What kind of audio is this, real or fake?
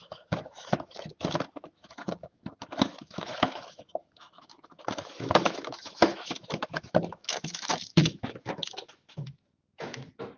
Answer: fake